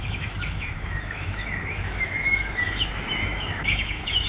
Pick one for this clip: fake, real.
fake